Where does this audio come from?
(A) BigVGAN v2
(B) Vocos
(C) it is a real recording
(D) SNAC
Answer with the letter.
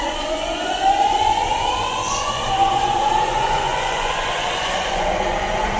B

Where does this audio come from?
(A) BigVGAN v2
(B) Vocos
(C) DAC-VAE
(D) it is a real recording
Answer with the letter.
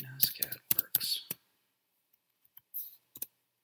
A